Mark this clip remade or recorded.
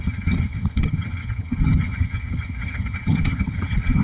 remade